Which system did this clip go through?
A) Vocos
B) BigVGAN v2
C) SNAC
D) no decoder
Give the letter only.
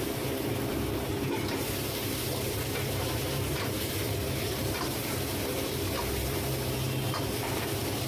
B